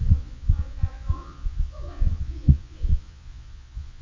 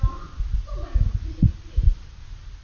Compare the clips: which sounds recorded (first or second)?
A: second